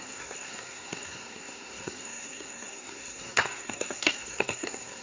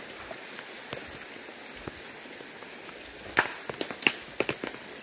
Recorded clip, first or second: second